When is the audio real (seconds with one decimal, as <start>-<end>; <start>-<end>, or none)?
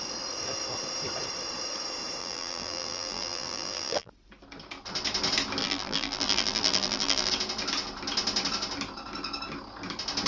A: 0.0-2.2; 4.1-5.6; 7.3-10.3